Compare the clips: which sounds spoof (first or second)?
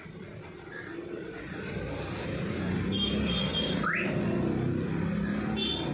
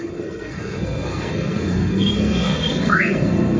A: second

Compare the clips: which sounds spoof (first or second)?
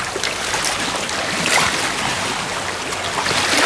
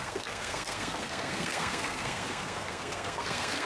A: second